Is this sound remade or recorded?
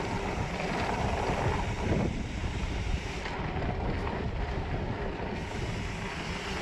recorded